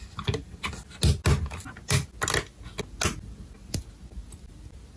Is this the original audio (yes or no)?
yes